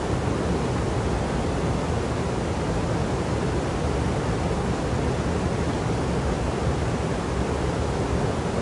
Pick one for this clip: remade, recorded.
recorded